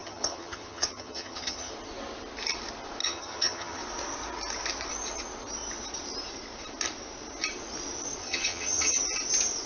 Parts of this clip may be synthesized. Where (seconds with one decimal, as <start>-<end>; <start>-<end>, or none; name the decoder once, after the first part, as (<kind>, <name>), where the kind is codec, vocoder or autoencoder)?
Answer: 0.0-1.7 (vocoder, HiFi-GAN); 3.0-3.8; 8.2-9.0